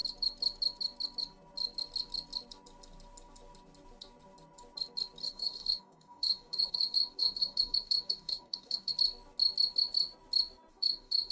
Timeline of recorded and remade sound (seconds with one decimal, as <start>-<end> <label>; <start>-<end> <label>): 0.0-5.2 recorded; 5.2-8.9 remade; 8.9-10.7 recorded; 10.7-11.3 remade